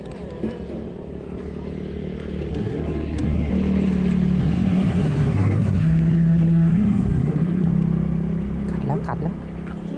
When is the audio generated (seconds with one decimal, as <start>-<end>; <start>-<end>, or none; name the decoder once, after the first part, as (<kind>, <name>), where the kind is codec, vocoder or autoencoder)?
2.5-3.5 (codec, SNAC); 4.4-7.7